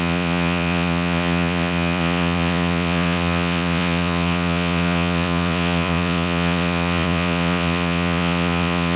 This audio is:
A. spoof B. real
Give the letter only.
A